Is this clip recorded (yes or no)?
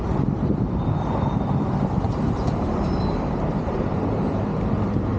no